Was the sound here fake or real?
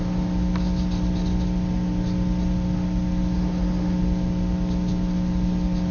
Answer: real